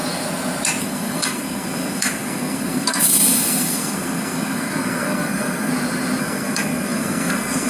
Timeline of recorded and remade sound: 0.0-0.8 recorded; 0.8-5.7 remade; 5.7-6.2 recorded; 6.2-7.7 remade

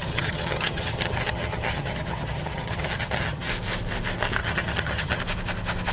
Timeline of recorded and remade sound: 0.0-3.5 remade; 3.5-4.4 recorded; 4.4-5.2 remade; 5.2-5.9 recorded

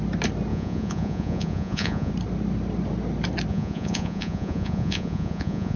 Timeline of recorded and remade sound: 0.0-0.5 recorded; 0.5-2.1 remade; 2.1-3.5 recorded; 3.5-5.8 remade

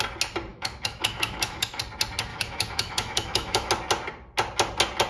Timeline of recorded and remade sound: 0.0-0.5 recorded; 0.5-1.8 remade; 1.8-2.3 recorded; 2.3-3.7 remade; 3.7-5.1 recorded

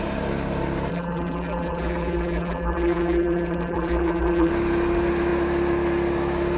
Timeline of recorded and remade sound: 0.0-0.9 recorded; 0.9-4.5 remade; 4.5-6.6 recorded